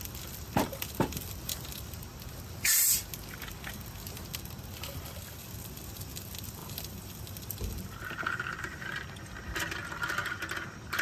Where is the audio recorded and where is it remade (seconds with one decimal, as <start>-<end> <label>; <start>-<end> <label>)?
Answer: 0.0-11.0 recorded